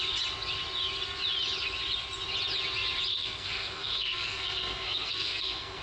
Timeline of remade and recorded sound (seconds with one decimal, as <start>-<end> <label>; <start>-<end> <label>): 0.0-3.1 recorded; 3.1-5.8 remade